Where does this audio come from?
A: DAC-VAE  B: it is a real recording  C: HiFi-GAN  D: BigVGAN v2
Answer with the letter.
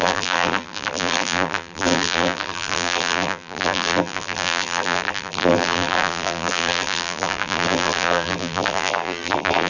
D